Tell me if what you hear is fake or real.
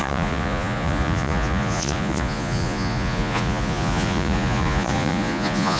fake